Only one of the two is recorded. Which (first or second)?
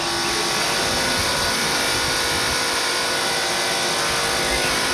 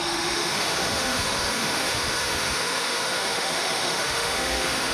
first